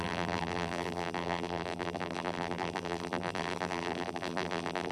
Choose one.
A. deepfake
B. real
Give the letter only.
A